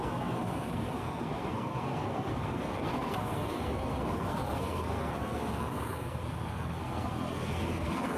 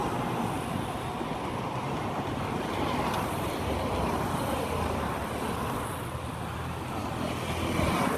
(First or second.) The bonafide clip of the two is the second